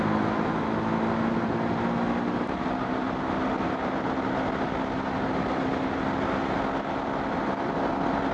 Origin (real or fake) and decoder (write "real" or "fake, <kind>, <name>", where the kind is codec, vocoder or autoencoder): real